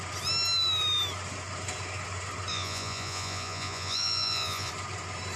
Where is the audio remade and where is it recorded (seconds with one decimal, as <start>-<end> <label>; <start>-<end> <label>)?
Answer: 0.0-2.5 recorded; 2.5-4.7 remade; 4.7-5.4 recorded